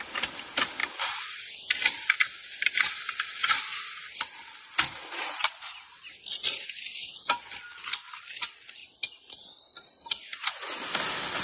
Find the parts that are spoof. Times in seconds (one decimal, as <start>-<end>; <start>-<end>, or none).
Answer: 0.8-3.6; 8.8-11.4